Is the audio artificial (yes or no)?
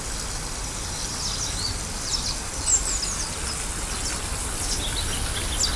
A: no